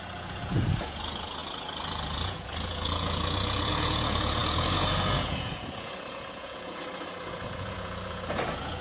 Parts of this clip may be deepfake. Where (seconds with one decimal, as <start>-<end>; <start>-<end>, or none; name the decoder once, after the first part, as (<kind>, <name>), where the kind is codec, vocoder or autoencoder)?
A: 0.0-8.8 (vocoder, Vocos)